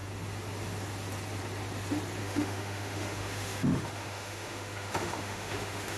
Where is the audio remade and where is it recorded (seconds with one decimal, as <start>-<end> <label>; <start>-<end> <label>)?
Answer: 0.0-2.2 recorded; 2.2-6.0 remade